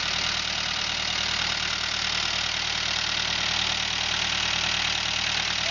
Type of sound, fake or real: fake